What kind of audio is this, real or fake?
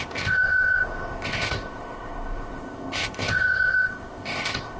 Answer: fake